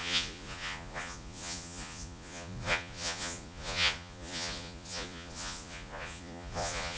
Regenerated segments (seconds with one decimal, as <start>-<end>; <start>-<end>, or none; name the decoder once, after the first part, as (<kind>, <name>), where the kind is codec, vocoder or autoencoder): 0.0-7.0 (vocoder, Vocos)